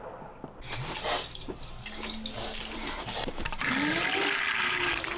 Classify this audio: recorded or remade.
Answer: recorded